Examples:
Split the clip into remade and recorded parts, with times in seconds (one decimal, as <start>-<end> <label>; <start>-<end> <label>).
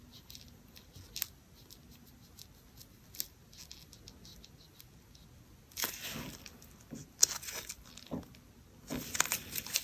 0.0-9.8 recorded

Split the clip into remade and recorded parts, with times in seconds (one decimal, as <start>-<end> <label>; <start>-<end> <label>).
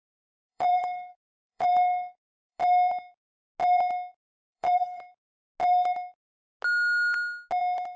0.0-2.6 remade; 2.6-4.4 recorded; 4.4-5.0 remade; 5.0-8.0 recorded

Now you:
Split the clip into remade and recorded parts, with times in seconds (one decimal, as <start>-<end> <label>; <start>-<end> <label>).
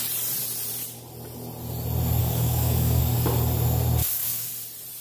0.0-2.2 recorded; 2.2-3.0 remade; 3.0-4.0 recorded; 4.0-4.5 remade; 4.5-5.0 recorded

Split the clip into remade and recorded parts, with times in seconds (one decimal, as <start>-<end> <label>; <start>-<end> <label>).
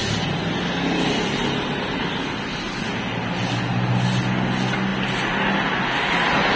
0.0-6.6 recorded